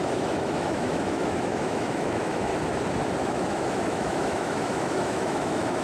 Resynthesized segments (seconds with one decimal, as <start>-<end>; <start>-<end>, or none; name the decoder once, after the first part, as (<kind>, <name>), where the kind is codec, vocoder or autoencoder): 0.0-2.5 (autoencoder, DAC-VAE); 3.2-5.8